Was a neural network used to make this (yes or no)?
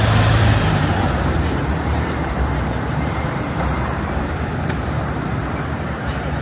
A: yes